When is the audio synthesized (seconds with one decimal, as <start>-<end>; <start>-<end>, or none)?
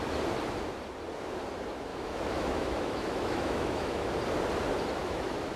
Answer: 1.9-4.1; 5.0-5.6